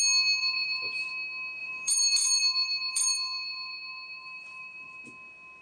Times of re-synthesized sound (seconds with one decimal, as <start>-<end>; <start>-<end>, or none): 0.4-1.1; 1.6-5.0